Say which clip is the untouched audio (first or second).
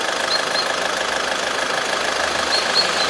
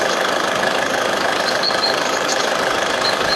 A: first